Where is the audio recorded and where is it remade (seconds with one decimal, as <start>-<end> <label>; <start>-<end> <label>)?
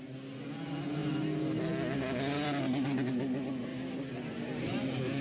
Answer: 0.0-3.7 recorded; 3.7-4.7 remade; 4.7-5.2 recorded